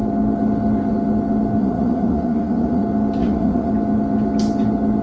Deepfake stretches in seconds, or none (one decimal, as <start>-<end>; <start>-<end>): 1.6-2.8; 3.2-3.7